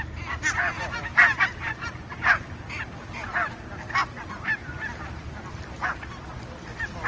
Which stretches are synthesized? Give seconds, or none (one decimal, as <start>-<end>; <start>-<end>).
4.6-5.9